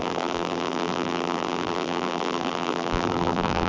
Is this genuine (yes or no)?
no